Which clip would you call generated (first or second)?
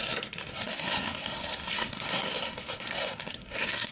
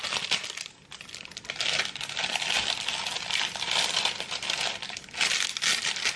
first